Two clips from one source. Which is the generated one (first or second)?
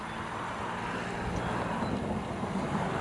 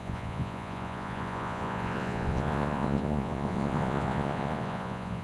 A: second